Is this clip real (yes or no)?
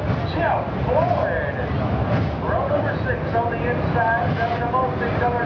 yes